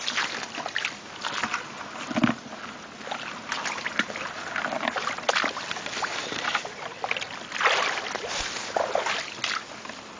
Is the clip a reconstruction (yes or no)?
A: no